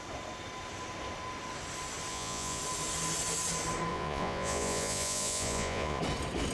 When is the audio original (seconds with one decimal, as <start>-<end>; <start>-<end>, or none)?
0.0-2.1; 2.6-3.9; 6.0-6.5